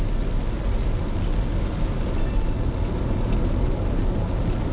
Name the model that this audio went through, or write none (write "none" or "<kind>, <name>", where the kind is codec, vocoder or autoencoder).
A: none